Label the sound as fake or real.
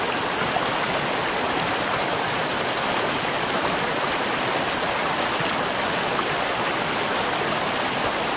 real